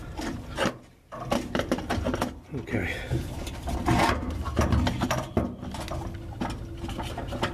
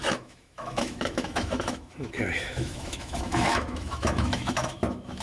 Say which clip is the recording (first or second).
first